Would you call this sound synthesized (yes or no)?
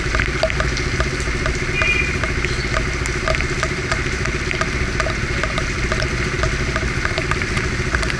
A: no